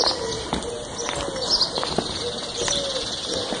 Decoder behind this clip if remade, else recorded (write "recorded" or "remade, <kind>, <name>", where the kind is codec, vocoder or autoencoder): recorded